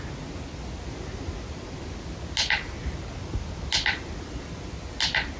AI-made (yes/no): no